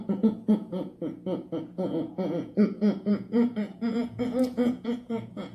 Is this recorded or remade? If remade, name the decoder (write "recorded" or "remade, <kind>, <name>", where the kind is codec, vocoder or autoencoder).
remade, vocoder, Vocos